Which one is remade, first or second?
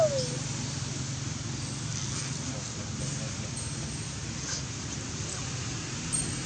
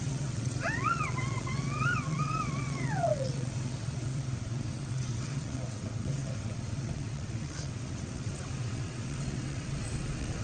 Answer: second